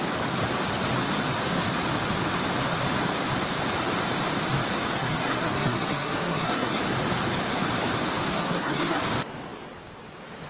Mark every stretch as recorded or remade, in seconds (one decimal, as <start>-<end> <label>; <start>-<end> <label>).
0.0-5.0 recorded; 5.0-6.8 remade; 6.8-8.3 recorded; 8.3-9.0 remade; 9.0-10.5 recorded